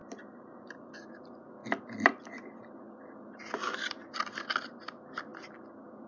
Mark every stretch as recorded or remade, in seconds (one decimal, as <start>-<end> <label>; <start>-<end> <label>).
0.0-0.9 remade; 0.9-6.1 recorded